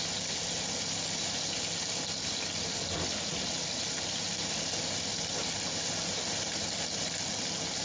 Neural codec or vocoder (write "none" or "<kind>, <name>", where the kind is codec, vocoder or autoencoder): none